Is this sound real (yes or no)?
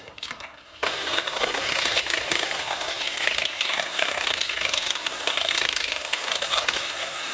no